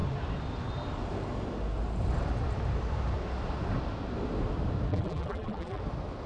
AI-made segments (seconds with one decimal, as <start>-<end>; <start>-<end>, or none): 4.9-5.8